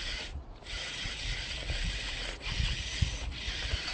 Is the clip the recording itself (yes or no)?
no